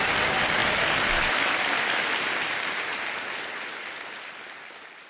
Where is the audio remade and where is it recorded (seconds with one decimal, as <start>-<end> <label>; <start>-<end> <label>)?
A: 0.0-5.1 recorded